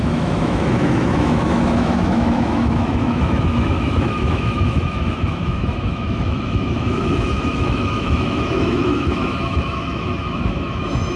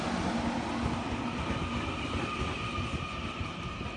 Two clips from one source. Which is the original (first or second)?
second